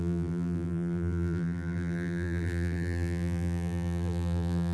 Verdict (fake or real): fake